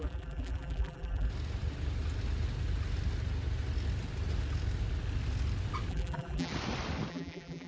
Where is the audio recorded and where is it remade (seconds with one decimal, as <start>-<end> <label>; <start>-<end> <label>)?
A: 0.0-1.3 remade; 1.3-5.9 recorded; 5.9-6.5 remade; 6.5-7.1 recorded; 7.1-7.7 remade

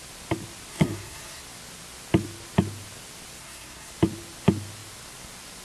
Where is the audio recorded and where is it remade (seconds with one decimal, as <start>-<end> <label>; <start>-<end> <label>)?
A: 0.0-0.7 recorded; 0.7-1.4 remade; 1.4-3.4 recorded; 3.4-3.9 remade; 3.9-5.6 recorded

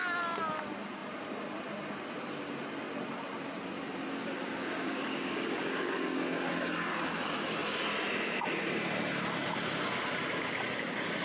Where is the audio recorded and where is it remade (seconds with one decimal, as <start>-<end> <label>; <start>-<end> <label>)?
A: 0.0-4.2 recorded; 4.2-6.5 remade; 6.5-11.2 recorded

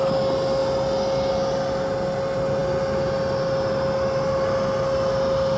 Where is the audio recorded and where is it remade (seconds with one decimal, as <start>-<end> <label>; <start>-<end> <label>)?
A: 0.0-5.6 recorded